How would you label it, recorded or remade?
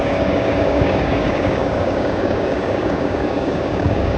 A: remade